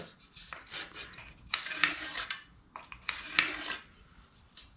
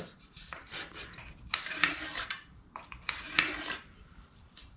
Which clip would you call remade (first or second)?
second